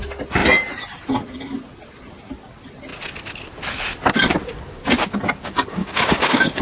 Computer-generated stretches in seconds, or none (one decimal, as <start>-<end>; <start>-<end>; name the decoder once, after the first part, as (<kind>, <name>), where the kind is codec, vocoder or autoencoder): 5.8-6.6 (codec, DAC)